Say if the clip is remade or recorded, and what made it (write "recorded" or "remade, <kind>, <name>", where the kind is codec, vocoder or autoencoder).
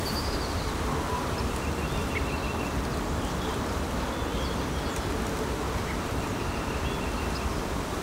recorded